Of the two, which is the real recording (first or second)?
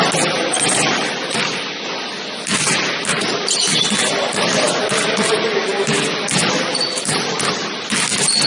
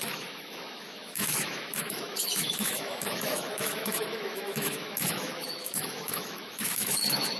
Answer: first